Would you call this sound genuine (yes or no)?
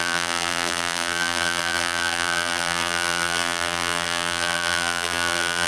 no